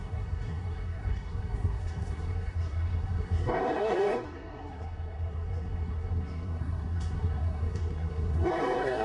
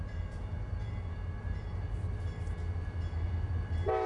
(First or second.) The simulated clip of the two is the first